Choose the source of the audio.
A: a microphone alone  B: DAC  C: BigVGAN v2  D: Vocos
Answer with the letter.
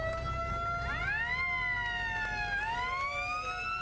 A